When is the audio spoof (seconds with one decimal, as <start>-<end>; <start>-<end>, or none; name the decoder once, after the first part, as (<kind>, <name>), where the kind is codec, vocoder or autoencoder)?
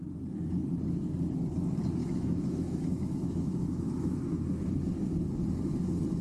2.0-4.7 (autoencoder, DAC-VAE)